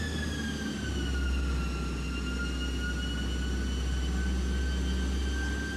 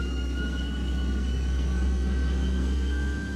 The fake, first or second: second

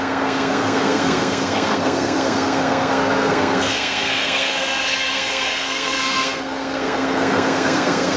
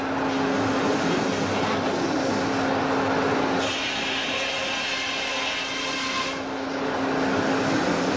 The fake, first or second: first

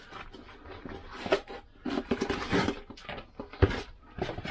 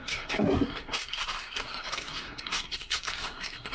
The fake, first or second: second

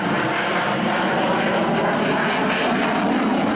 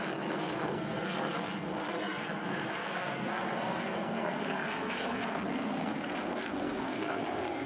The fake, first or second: second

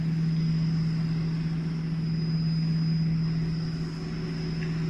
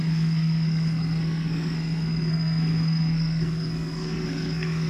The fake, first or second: second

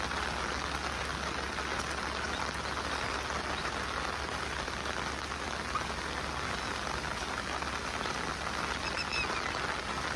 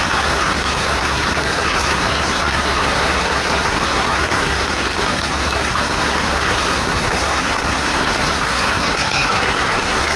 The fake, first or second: second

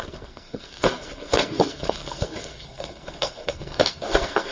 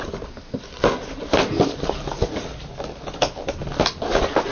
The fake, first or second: first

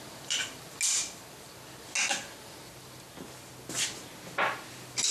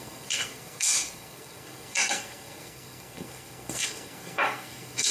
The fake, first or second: second